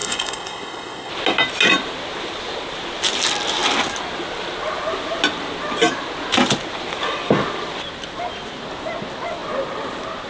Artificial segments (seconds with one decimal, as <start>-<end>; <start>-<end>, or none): 0.0-1.1